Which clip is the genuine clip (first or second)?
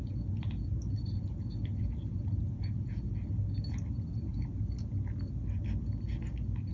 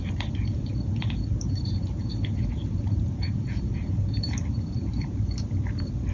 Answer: first